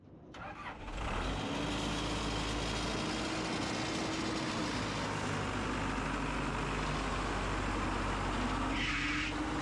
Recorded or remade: recorded